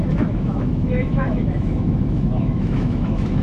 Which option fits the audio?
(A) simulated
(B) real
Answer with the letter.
A